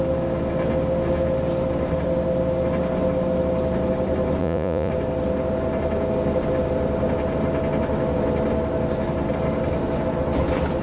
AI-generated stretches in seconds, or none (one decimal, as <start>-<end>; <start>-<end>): 4.4-4.9